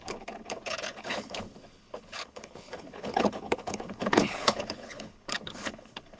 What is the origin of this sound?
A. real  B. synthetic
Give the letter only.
B